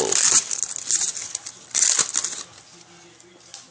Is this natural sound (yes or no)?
yes